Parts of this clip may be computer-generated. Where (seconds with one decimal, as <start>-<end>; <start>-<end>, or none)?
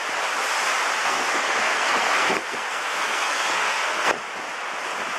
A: 1.0-4.1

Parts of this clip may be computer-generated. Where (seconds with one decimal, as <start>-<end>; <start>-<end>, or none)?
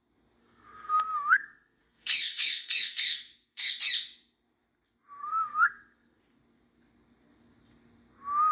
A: 0.4-3.7; 5.2-6.2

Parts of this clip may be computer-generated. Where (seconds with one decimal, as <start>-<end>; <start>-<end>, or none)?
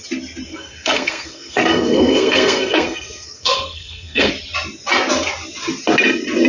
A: 0.5-4.3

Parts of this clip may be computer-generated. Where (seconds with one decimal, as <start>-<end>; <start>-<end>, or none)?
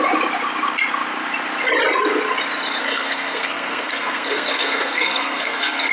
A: 2.8-5.9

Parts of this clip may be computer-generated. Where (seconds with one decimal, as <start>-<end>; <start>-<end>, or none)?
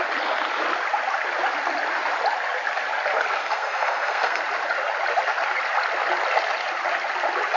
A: 3.4-4.4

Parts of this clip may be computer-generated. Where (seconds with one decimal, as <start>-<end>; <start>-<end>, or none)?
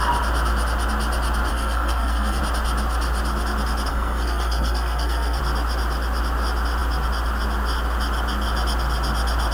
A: 1.5-2.4; 3.9-5.4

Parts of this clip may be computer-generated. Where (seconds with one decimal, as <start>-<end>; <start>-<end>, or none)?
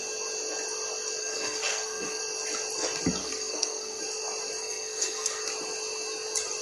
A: 1.2-2.2; 3.2-4.0; 4.6-5.4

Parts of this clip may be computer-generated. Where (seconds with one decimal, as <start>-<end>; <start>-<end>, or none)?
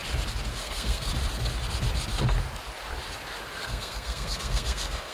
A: 0.5-1.1; 3.6-5.1